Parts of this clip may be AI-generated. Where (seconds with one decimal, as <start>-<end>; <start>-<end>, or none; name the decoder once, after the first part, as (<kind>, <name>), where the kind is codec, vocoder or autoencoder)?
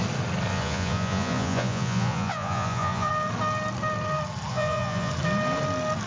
0.5-3.1 (vocoder, Vocos); 4.5-5.1